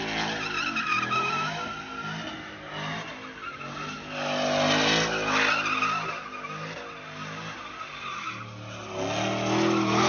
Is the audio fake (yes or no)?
no